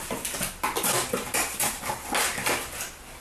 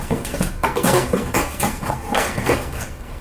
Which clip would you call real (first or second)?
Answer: first